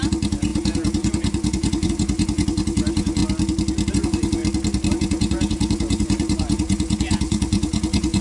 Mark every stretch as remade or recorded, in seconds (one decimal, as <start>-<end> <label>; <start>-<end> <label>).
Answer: 0.0-3.2 remade; 3.2-3.9 recorded; 3.9-4.4 remade; 4.4-4.9 recorded; 4.9-8.2 remade